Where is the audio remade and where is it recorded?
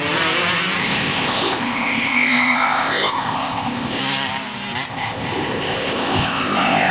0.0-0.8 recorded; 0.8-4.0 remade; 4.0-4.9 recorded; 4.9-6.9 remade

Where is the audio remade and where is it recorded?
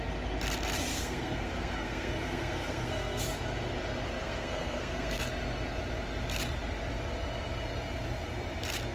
0.0-0.9 recorded; 0.9-3.2 remade; 3.2-4.2 recorded; 4.2-5.3 remade; 5.3-8.9 recorded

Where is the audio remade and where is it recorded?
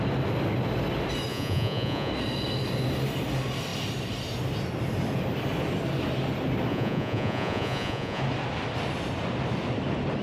0.0-1.3 recorded; 1.3-2.1 remade; 2.1-6.7 recorded; 6.7-8.2 remade; 8.2-10.2 recorded